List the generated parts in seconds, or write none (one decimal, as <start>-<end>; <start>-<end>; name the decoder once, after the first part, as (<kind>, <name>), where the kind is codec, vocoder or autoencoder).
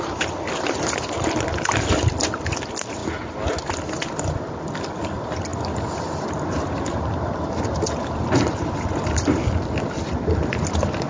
none